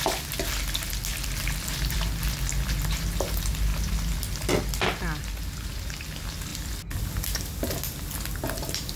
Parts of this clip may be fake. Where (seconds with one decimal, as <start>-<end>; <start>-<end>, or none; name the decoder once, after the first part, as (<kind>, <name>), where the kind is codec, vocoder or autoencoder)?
1.1-2.4 (vocoder, BigVGAN v2); 6.5-7.0

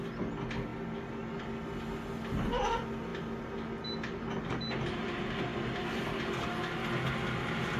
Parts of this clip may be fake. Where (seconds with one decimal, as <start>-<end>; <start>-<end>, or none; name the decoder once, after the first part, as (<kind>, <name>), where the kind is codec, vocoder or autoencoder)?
none